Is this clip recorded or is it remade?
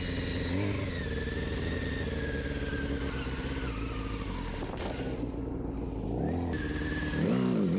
recorded